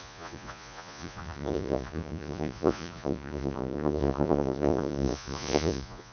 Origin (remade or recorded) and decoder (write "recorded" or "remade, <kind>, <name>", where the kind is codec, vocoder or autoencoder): remade, vocoder, Vocos